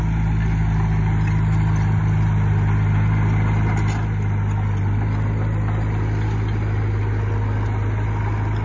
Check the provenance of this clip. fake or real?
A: real